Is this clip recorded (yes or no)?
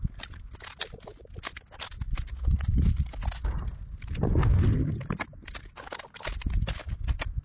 yes